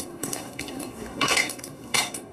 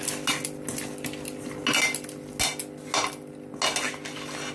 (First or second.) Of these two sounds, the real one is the second